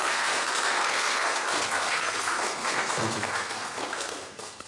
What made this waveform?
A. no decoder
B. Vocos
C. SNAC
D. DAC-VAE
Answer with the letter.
C